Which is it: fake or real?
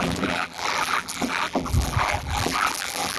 fake